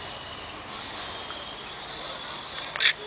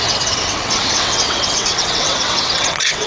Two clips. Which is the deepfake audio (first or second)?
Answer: second